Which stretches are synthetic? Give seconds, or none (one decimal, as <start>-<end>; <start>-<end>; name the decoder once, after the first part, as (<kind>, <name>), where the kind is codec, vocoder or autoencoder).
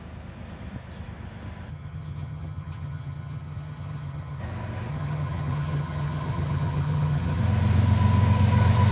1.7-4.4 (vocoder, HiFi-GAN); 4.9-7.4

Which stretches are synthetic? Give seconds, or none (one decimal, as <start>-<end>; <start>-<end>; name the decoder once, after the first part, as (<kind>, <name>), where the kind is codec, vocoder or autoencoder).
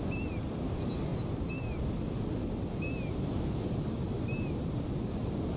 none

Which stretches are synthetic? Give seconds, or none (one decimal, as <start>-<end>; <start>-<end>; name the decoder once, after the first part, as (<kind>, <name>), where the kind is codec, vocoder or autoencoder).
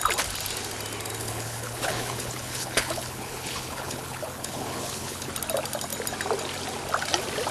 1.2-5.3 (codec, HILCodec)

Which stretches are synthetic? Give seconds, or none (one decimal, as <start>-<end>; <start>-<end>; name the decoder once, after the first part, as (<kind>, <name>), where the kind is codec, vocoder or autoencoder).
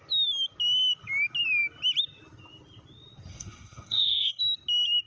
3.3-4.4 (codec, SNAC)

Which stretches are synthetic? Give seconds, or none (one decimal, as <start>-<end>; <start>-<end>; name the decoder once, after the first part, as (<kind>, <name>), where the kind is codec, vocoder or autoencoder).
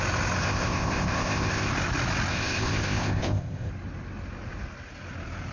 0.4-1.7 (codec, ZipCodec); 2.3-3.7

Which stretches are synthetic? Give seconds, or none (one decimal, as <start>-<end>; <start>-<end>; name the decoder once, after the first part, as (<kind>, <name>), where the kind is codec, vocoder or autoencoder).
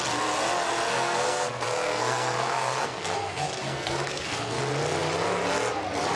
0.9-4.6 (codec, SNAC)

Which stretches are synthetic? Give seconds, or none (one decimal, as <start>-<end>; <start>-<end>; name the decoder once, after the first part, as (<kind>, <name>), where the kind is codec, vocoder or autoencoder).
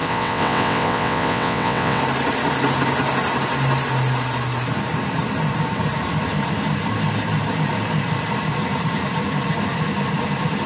0.0-2.0 (vocoder, WaveNeXt)